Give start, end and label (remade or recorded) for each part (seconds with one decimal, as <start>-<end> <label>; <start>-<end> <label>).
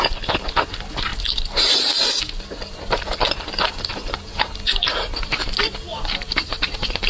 0.0-5.9 recorded; 5.9-7.1 remade